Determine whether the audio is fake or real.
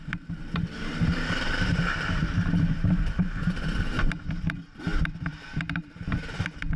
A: fake